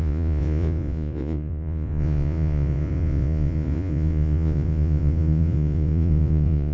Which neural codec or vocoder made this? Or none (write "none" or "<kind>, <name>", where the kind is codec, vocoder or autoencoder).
vocoder, Vocos